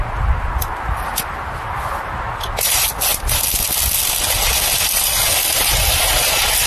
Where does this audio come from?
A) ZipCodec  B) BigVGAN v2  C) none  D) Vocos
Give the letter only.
C